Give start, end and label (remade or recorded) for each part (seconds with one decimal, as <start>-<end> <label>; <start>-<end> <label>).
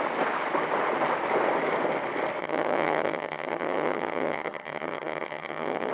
0.0-2.4 recorded; 2.4-5.9 remade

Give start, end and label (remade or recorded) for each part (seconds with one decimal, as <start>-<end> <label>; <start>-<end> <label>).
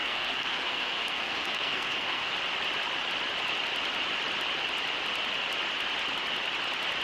0.0-2.3 remade; 2.3-7.0 recorded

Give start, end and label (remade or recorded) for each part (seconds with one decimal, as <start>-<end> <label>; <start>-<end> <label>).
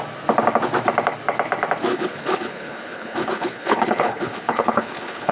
0.0-1.9 recorded; 1.9-5.3 remade